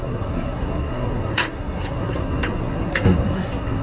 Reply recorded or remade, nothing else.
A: remade